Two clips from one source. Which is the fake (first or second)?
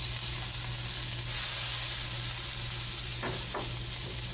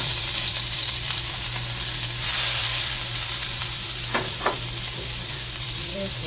second